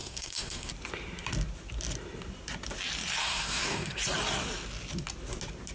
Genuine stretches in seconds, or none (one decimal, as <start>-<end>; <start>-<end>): 0.7-3.2; 4.0-5.7